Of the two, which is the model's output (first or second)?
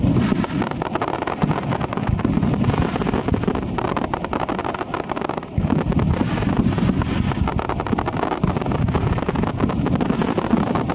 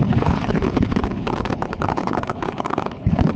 second